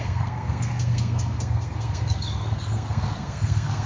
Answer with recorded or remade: remade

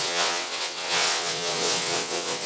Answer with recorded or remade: remade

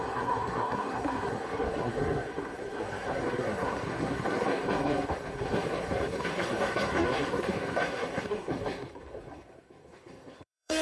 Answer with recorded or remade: remade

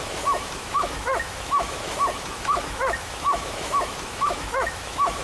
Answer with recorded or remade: remade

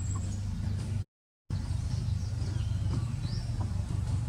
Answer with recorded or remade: recorded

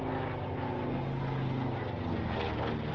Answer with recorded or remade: recorded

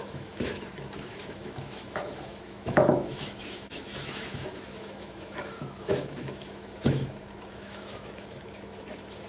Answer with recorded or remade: remade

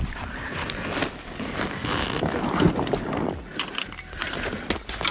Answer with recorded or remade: recorded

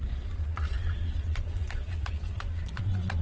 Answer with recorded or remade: remade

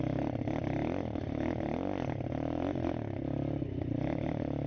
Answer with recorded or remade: recorded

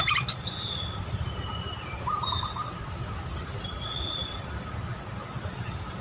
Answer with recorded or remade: recorded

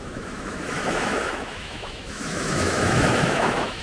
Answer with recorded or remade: remade